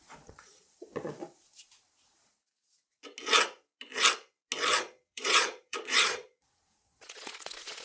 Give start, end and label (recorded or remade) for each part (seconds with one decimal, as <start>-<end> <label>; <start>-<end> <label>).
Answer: 0.0-1.2 remade; 1.2-4.8 recorded; 4.8-7.8 remade